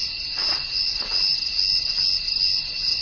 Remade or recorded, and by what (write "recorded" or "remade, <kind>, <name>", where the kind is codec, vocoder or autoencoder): recorded